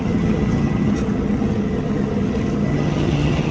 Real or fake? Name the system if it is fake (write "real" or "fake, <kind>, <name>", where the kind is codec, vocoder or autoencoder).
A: fake, vocoder, HiFi-GAN